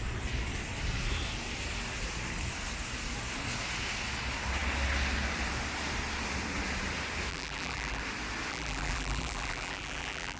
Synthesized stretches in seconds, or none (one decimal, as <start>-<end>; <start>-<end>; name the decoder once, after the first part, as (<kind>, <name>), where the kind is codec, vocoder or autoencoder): 7.3-8.0 (vocoder, BigVGAN v2); 8.5-10.4